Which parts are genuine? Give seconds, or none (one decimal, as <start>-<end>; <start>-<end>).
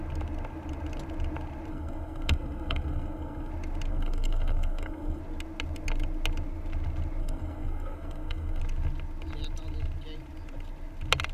0.0-1.7; 3.5-3.9; 5.2-7.2; 8.6-11.3